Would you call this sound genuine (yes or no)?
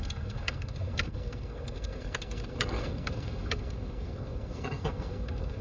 no